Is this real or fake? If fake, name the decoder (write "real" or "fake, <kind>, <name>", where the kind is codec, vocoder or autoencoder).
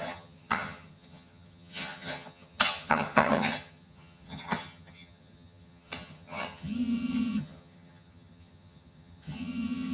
fake, vocoder, HiFi-GAN